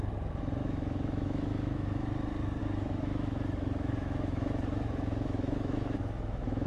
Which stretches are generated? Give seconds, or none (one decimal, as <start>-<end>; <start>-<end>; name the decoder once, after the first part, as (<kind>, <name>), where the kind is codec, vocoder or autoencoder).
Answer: 0.6-2.1 (autoencoder, DAC-VAE); 2.6-6.7